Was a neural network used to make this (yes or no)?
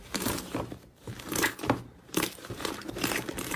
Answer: yes